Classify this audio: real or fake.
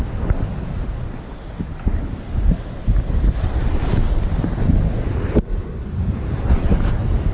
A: real